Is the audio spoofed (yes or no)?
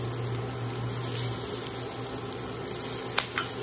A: no